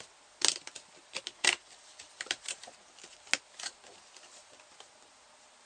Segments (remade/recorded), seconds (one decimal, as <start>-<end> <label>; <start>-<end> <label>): 0.0-1.0 recorded; 1.0-2.6 remade; 2.6-5.7 recorded